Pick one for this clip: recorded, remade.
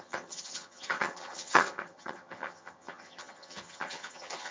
remade